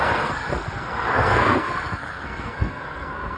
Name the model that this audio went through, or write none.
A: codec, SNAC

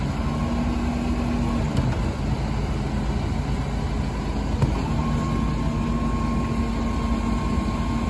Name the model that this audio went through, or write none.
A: none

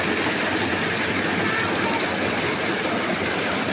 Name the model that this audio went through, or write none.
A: none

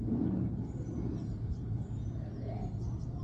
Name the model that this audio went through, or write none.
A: vocoder, BigVGAN v2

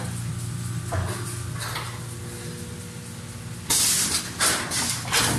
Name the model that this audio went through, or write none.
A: none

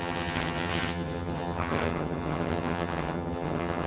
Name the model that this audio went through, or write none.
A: vocoder, HiFi-GAN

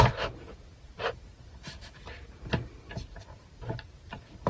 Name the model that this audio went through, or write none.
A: vocoder, BigVGAN v2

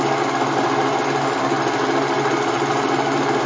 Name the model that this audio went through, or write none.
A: none